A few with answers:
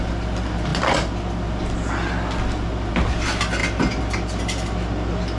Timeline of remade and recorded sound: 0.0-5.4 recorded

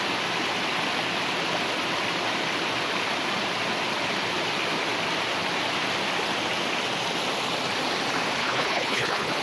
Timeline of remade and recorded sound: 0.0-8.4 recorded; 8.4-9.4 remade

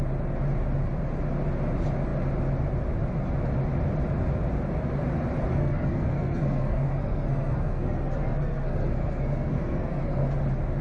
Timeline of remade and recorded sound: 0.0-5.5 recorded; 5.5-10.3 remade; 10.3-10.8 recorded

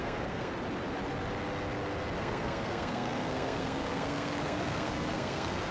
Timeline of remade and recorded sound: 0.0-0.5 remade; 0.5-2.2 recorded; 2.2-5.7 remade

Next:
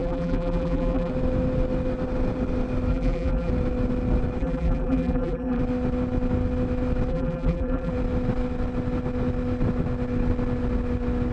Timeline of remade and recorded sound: 0.0-1.1 remade; 1.1-2.9 recorded; 2.9-3.5 remade; 3.5-4.4 recorded; 4.4-5.6 remade; 5.6-7.1 recorded; 7.1-7.9 remade; 7.9-11.3 recorded

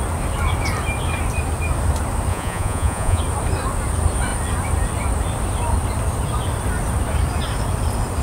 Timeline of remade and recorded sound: 0.0-2.3 recorded; 2.3-3.2 remade; 3.2-8.2 recorded